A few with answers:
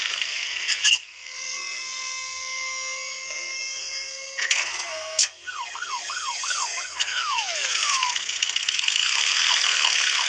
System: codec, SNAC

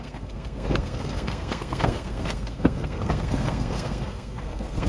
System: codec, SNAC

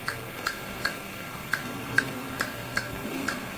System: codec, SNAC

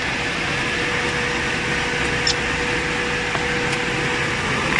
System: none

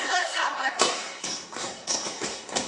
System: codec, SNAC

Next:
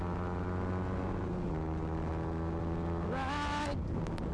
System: none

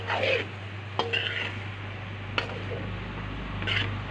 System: none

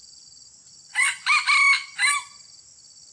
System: none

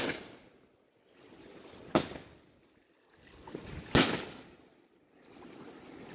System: none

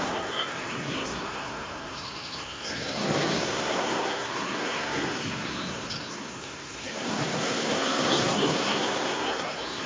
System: codec, SNAC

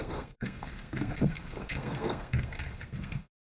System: codec, SNAC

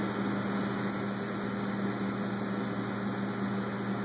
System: none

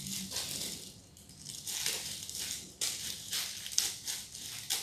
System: none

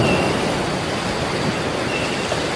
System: none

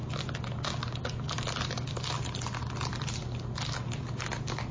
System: none